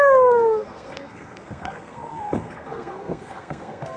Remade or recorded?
remade